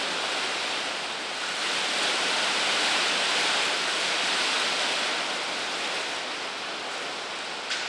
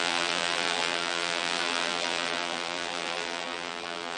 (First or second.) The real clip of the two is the first